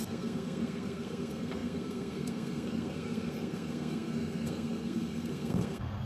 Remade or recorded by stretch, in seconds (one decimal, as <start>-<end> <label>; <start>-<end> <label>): 0.0-6.1 remade